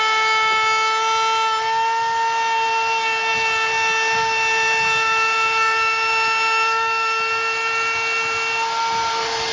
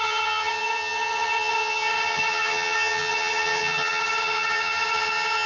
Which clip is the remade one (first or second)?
second